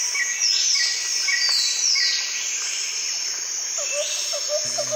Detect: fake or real real